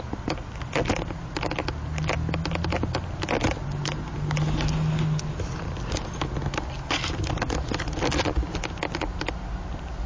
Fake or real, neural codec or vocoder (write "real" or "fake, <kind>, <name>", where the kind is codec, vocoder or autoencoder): real